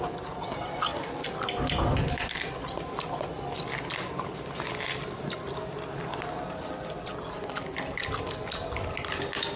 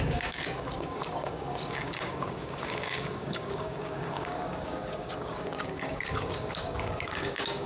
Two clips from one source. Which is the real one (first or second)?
first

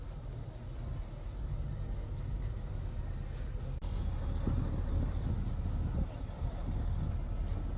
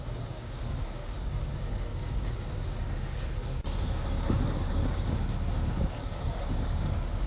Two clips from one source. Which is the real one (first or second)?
first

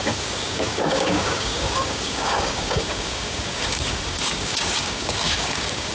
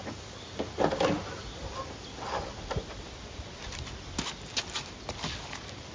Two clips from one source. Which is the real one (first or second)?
second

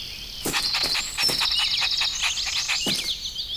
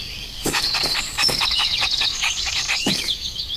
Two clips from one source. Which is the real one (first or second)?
first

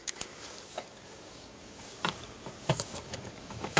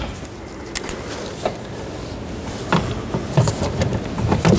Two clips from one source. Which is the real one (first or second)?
second